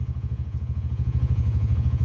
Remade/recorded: remade